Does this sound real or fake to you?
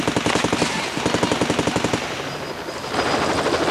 real